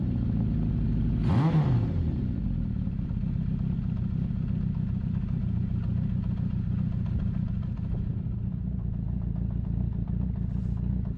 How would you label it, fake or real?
real